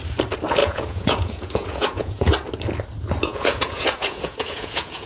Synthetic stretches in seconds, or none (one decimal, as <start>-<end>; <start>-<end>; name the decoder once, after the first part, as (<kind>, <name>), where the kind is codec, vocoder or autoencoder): 0.6-2.3 (vocoder, Vocos); 3.3-5.1